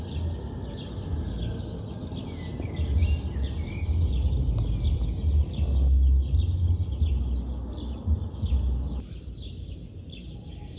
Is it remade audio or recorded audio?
recorded